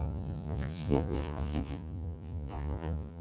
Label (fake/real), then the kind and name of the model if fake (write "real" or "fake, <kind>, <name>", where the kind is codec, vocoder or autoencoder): fake, vocoder, Vocos